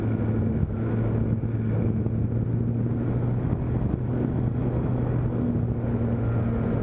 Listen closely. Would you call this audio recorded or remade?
recorded